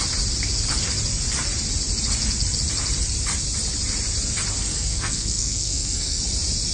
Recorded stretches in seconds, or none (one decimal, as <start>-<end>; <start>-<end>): 0.0-4.7; 6.2-6.7